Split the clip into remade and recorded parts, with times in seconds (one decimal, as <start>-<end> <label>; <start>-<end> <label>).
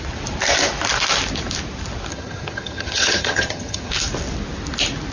0.0-2.1 recorded; 2.1-3.9 remade; 3.9-5.1 recorded